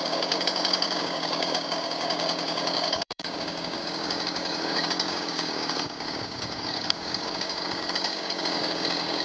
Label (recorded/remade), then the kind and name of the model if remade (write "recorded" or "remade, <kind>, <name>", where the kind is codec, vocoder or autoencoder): remade, codec, DAC